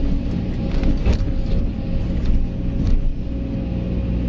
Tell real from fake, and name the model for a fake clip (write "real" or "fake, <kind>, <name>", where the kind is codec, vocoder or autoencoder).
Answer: real